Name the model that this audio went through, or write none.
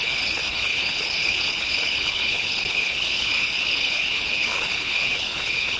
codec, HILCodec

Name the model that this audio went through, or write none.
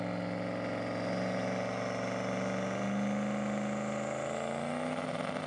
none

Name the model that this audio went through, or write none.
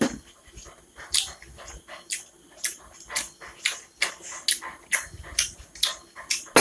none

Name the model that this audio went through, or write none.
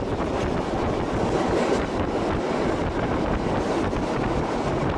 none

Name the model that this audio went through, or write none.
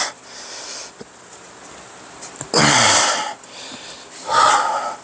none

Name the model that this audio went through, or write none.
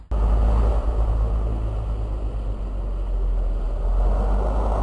none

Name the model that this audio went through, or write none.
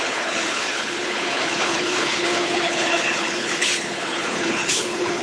codec, HILCodec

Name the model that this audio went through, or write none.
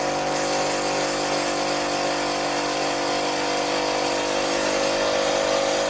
none